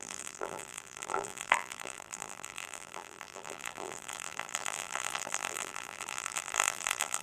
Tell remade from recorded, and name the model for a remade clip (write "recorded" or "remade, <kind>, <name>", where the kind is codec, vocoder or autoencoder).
remade, vocoder, BigVGAN v2